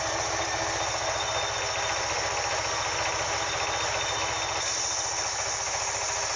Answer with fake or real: real